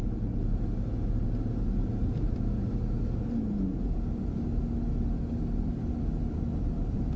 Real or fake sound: real